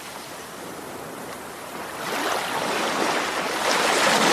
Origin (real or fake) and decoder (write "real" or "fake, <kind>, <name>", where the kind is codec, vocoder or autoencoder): real